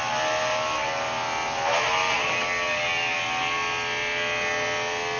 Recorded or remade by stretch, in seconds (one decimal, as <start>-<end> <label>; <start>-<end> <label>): 0.0-2.2 remade; 2.2-5.2 recorded